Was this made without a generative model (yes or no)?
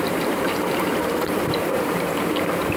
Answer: no